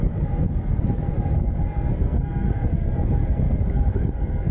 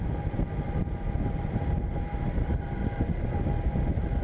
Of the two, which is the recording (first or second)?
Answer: second